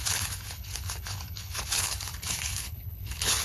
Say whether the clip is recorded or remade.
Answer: remade